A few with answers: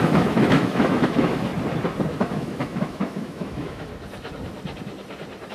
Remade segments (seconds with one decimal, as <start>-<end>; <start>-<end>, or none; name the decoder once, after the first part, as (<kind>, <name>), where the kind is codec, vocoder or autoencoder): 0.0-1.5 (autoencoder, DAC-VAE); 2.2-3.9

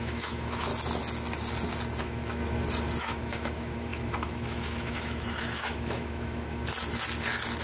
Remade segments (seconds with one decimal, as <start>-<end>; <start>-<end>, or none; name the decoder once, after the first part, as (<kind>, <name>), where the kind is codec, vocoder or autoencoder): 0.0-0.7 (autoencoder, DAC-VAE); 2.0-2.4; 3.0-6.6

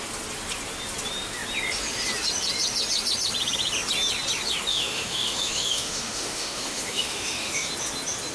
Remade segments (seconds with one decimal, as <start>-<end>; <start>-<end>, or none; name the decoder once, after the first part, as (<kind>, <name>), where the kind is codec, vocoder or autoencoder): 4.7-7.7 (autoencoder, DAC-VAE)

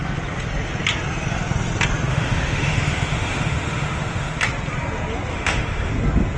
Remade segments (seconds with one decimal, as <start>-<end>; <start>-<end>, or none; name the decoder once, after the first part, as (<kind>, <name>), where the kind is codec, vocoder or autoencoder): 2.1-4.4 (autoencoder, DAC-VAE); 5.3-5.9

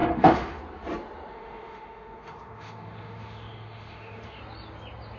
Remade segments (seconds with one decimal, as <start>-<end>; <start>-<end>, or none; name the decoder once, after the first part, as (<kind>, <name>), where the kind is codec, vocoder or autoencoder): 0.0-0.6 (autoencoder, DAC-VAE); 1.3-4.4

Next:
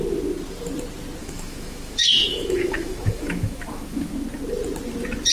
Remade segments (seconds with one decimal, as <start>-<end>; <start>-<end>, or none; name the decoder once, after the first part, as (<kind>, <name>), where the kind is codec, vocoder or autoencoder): 1.2-4.1 (autoencoder, DAC-VAE)